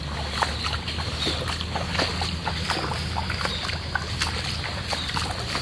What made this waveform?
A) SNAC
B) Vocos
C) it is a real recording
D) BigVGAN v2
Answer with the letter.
C